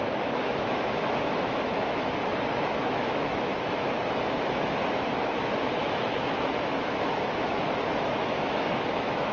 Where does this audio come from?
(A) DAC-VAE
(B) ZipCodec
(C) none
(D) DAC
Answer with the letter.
A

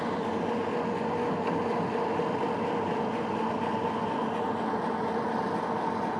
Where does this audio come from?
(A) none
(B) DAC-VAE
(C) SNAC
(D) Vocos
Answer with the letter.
A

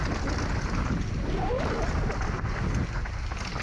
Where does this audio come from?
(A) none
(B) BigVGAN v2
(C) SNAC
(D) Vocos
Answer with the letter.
A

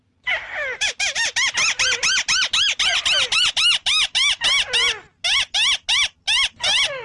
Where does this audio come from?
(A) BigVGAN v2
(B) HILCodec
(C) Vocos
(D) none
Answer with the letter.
D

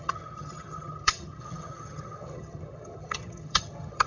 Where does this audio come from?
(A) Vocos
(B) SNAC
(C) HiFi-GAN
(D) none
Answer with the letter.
C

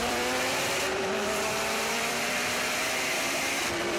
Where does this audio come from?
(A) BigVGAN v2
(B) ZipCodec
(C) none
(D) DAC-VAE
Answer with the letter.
A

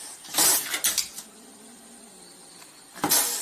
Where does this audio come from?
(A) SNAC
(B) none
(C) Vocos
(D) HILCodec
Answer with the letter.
B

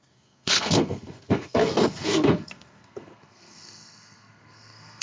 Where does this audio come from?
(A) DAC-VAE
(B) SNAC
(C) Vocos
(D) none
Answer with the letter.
B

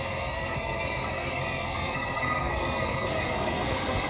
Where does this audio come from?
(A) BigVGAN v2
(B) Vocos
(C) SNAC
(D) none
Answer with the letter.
C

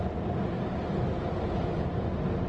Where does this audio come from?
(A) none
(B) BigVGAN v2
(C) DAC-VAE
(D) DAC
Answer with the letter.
A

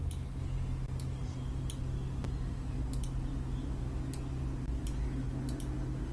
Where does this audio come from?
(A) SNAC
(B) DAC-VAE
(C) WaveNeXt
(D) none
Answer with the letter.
D